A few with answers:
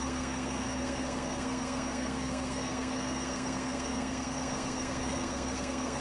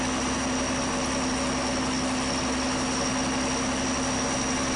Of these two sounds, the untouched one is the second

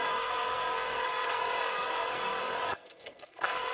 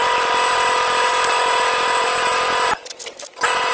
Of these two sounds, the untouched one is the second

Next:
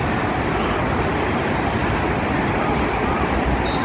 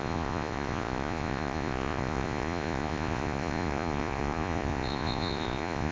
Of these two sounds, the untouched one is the first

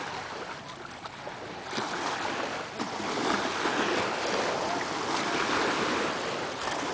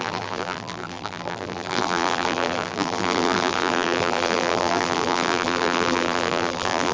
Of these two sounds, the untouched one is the first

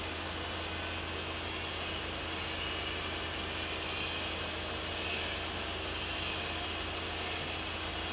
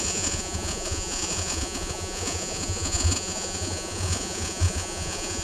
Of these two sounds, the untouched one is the first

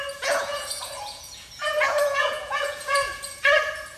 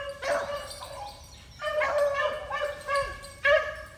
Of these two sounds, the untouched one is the second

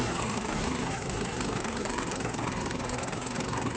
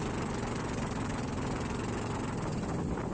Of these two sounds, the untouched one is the second